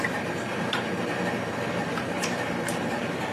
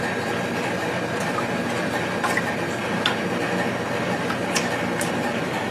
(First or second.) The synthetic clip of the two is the first